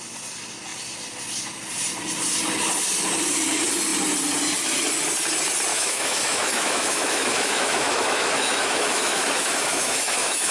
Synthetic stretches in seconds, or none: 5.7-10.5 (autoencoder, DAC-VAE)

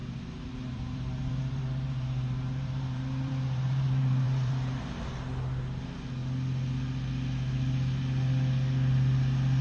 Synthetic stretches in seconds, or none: 0.0-4.8 (vocoder, BigVGAN v2)

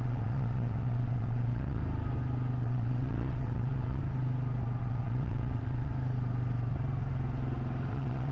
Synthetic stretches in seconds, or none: 0.0-1.8 (vocoder, WaveNeXt); 2.6-4.0; 4.8-5.9; 7.9-8.3